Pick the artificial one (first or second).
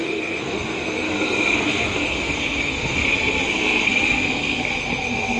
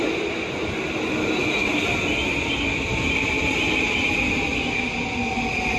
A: first